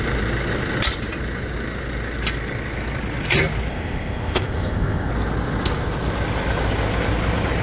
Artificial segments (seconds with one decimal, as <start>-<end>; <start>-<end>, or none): 3.7-5.1